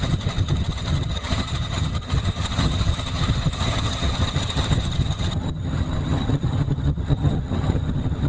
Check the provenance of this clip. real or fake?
fake